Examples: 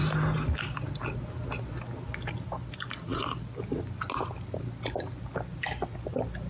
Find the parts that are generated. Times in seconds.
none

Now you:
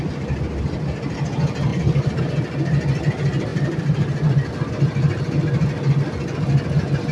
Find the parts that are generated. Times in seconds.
1.7-2.2 (vocoder, BigVGAN v2); 3.5-4.7

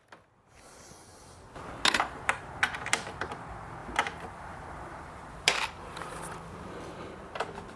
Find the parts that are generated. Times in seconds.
1.1-1.8 (vocoder, BigVGAN v2); 3.8-7.3

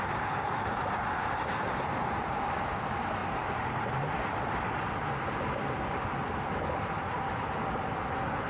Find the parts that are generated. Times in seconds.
none

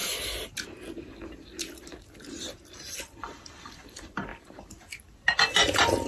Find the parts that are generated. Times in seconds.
2.4-6.1 (vocoder, BigVGAN v2)

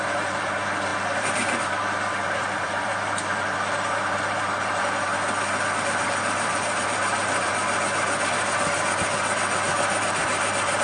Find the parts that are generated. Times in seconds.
0.0-5.1 (vocoder, BigVGAN v2); 5.8-7.5; 10.0-10.8